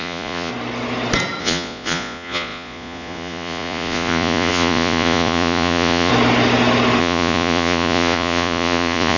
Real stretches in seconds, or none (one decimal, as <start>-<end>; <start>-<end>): 0.5-1.4; 6.1-7.0